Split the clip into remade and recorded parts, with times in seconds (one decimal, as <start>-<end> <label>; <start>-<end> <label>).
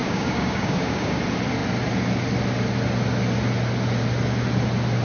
0.0-1.2 remade; 1.2-5.0 recorded